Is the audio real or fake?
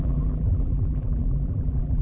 fake